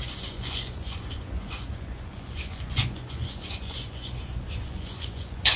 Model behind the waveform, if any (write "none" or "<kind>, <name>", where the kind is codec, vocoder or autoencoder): vocoder, Vocos